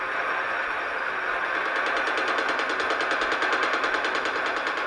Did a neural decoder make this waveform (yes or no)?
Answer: no